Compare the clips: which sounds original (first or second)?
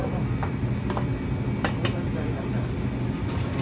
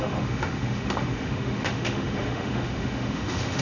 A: first